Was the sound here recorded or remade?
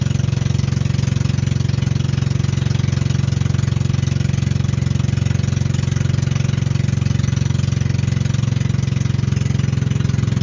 recorded